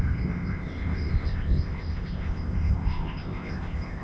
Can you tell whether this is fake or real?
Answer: fake